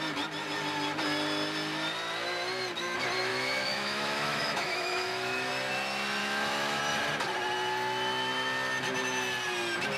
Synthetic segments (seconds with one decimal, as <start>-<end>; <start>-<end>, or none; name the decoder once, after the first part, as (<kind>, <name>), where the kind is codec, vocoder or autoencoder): 3.3-5.5 (autoencoder, DAC-VAE); 6.2-6.8